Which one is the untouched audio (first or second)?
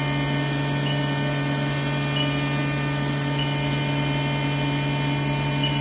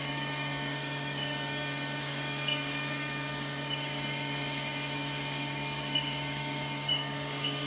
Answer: first